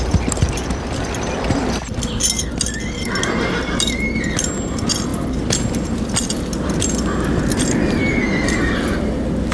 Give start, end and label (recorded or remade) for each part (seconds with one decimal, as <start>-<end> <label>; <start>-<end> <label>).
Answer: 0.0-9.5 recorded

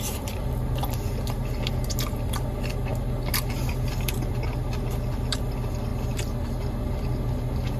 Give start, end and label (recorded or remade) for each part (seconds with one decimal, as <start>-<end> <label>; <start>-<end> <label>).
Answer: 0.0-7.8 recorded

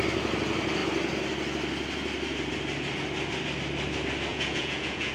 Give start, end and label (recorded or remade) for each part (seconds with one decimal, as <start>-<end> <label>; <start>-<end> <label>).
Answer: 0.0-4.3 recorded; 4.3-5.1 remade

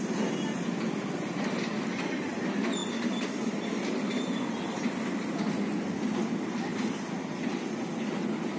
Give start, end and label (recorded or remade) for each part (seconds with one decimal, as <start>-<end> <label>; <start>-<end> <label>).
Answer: 0.0-2.8 recorded; 2.8-5.1 remade; 5.1-6.7 recorded; 6.7-7.5 remade; 7.5-8.6 recorded

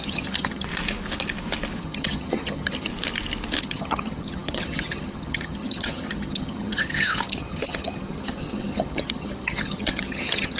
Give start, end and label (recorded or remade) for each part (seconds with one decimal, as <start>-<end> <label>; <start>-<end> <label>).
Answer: 0.0-0.7 remade; 0.7-1.8 recorded; 1.8-2.9 remade; 2.9-3.6 recorded; 3.6-10.6 remade

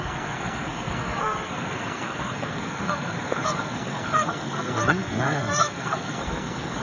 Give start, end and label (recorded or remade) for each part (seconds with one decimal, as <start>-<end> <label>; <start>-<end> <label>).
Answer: 0.0-6.8 remade